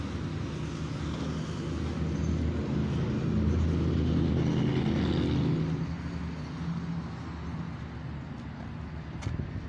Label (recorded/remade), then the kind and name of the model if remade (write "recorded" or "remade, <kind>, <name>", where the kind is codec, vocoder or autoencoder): recorded